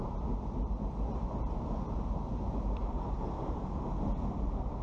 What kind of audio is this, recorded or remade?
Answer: recorded